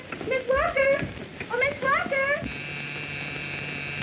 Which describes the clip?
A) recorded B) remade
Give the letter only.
A